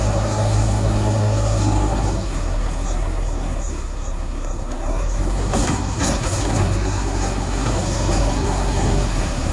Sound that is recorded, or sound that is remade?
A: remade